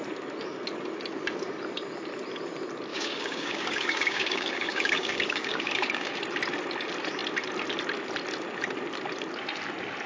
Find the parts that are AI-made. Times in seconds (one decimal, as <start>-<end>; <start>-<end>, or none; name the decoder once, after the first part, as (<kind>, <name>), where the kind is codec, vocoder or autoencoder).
2.9-6.2 (codec, DAC)